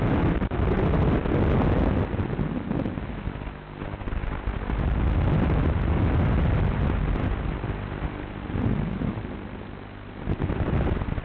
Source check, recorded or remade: recorded